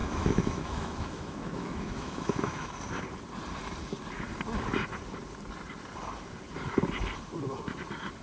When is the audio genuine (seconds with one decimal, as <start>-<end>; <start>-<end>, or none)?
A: 2.7-8.2